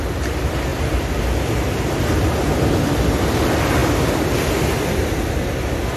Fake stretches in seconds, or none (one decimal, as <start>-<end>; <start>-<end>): 0.7-1.2